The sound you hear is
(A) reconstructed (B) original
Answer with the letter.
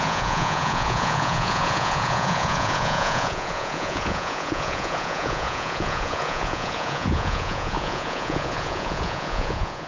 A